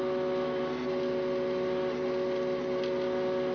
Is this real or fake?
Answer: real